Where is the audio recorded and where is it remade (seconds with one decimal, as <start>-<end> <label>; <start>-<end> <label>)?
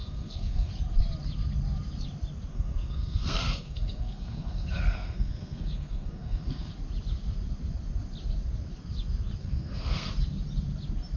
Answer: 0.0-0.7 remade; 0.7-2.5 recorded; 2.5-6.7 remade; 6.7-9.4 recorded; 9.4-10.1 remade; 10.1-11.2 recorded